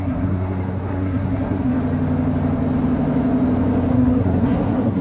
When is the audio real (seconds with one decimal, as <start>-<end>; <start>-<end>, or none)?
1.7-3.9